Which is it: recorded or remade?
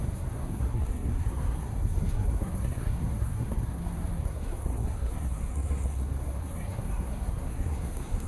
remade